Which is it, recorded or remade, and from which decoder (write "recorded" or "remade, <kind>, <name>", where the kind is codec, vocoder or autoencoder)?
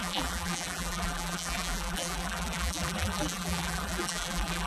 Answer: remade, vocoder, BigVGAN v2